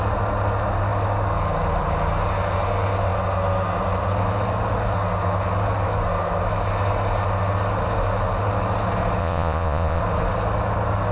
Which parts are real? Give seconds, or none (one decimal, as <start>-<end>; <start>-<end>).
0.0-9.2; 10.0-11.1